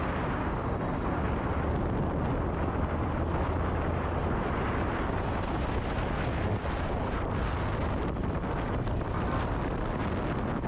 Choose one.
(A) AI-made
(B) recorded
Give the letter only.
B